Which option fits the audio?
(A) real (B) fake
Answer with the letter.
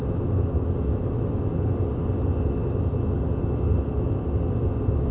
A